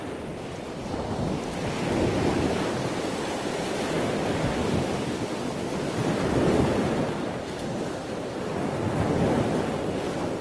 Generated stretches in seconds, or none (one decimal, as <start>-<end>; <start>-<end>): 6.0-7.6